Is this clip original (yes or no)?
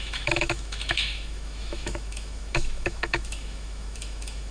no